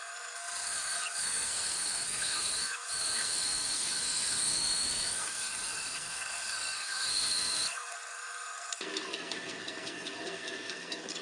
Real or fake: fake